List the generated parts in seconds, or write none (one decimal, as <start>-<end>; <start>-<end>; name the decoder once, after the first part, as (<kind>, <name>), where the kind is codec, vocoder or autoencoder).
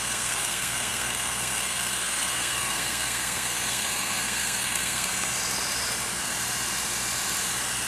0.0-5.1 (codec, SNAC)